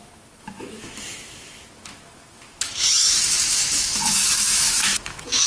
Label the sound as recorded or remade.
remade